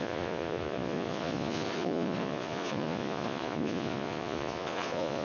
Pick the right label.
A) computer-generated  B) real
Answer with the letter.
A